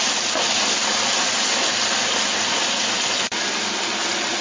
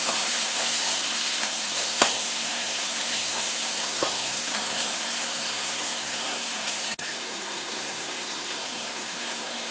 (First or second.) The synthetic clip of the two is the second